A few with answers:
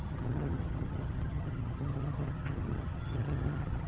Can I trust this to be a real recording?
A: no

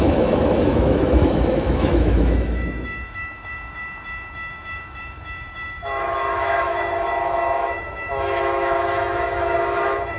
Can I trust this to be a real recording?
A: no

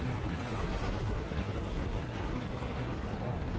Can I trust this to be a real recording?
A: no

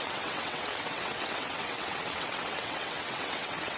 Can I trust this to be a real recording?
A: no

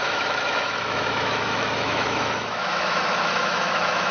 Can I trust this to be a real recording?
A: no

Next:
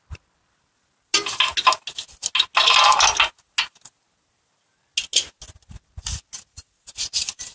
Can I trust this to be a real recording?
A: yes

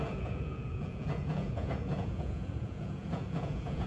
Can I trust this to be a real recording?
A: no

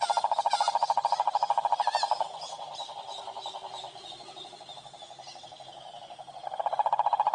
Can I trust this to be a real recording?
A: yes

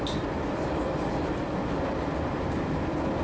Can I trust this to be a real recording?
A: yes